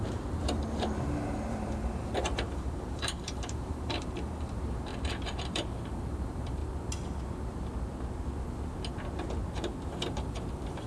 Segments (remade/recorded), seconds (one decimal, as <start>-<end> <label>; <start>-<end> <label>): 0.0-4.9 remade; 4.9-5.5 recorded; 5.5-6.6 remade; 6.6-10.1 recorded; 10.1-10.9 remade